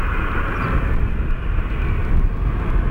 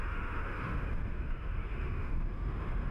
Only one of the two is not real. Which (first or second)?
second